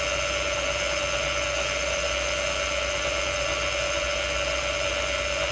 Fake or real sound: real